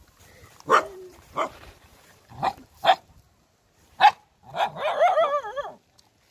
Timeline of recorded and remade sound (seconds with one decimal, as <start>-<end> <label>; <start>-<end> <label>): 0.0-0.7 recorded; 0.7-3.2 remade; 3.2-4.5 recorded; 4.5-5.1 remade; 5.1-6.3 recorded